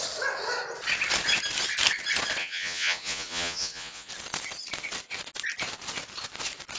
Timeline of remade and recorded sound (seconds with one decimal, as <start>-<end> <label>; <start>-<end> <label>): 0.0-2.4 recorded; 2.4-4.1 remade; 4.1-6.8 recorded

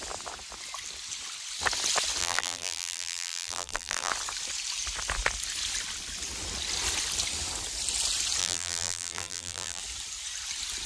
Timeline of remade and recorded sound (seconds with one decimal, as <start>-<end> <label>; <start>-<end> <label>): 0.0-2.2 recorded; 2.2-4.1 remade; 4.1-8.4 recorded; 8.4-9.8 remade; 9.8-10.9 recorded

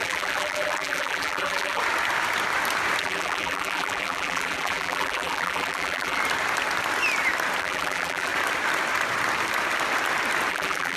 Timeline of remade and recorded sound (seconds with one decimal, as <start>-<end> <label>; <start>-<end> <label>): 0.0-1.8 remade; 1.8-3.0 recorded; 3.0-6.2 remade; 6.2-7.6 recorded; 7.6-8.3 remade; 8.3-10.5 recorded; 10.5-11.0 remade

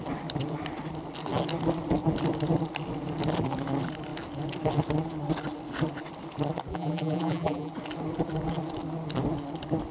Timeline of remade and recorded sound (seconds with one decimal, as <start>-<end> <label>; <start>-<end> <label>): 0.0-6.7 recorded; 6.7-7.7 remade; 7.7-9.9 recorded